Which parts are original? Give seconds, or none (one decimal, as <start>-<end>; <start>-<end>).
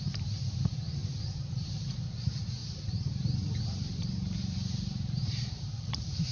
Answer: none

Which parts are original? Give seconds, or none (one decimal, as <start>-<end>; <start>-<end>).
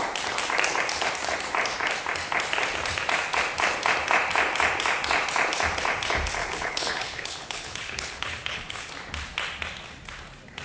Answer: 0.0-6.4; 8.9-10.6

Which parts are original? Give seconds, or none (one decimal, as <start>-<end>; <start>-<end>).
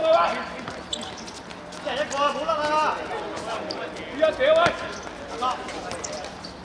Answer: 0.0-6.6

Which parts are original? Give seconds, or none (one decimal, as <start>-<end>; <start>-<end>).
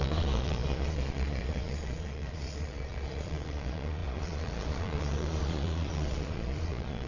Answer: none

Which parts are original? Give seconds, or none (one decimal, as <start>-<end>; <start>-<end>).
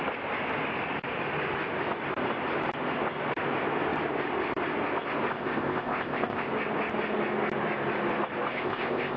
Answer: 0.0-5.3; 6.5-8.5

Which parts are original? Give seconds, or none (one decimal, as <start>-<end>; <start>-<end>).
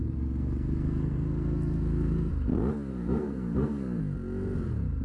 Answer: 2.3-2.9; 4.0-5.0